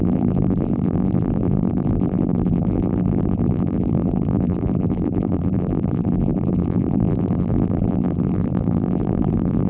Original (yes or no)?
no